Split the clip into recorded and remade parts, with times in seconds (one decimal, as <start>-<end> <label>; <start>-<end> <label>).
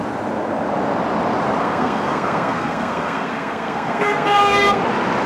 0.0-1.6 recorded; 1.6-4.8 remade; 4.8-5.3 recorded